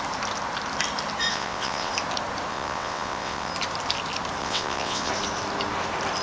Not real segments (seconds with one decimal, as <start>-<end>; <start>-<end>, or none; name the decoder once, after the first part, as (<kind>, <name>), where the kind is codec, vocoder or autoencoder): 1.3-1.9 (vocoder, WaveNeXt); 2.5-3.5; 4.4-5.1